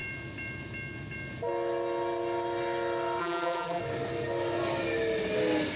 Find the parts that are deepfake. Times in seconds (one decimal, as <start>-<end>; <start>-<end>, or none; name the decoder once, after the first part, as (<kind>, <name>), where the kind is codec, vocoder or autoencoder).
3.2-3.8 (vocoder, BigVGAN v2)